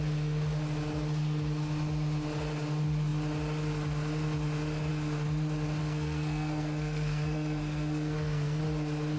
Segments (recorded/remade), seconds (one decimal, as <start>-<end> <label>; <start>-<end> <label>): 0.0-5.8 recorded; 5.8-8.6 remade; 8.6-9.2 recorded